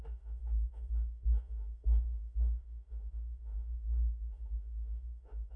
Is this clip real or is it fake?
fake